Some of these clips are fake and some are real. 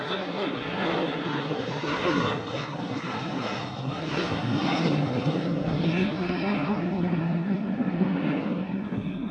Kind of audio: fake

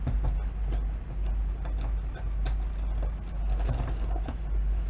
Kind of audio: real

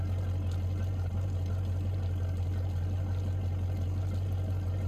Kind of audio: real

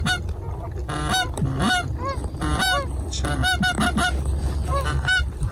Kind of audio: real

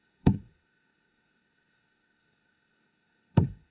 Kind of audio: fake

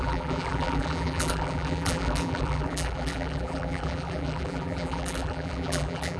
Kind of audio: fake